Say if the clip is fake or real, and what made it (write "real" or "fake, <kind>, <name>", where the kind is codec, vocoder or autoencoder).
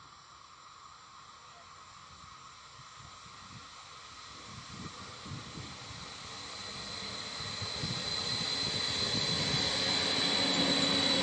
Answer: real